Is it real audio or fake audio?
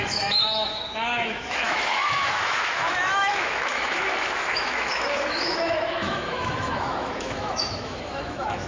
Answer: fake